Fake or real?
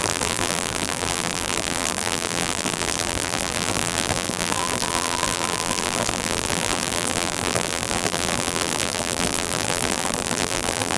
fake